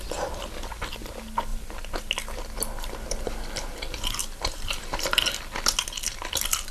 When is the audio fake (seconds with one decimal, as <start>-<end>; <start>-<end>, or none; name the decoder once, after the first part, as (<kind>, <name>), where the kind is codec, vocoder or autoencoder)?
4.2-5.3 (vocoder, BigVGAN v2)